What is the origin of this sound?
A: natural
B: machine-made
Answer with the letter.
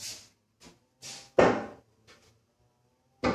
A